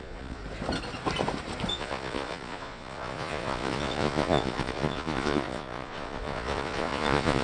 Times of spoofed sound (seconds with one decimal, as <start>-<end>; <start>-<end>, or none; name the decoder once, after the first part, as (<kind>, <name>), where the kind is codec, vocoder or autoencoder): 0.0-0.4 (vocoder, Vocos); 1.7-7.4